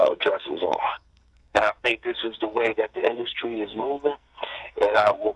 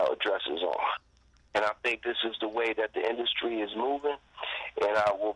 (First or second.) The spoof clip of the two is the first